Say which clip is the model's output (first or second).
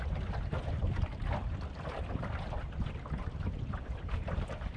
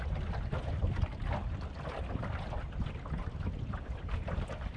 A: first